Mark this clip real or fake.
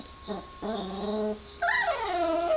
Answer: real